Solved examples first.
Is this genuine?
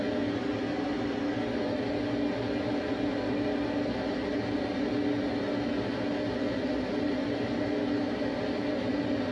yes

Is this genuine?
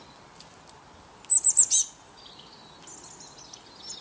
yes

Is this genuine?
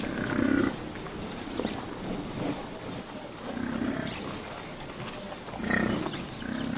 yes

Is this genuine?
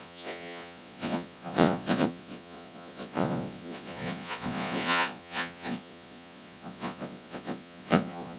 no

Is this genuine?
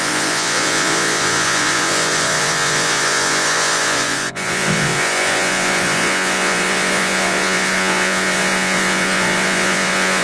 no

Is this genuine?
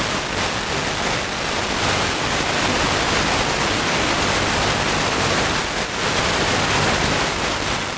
yes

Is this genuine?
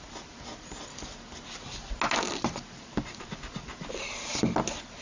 yes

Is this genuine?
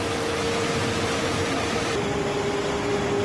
yes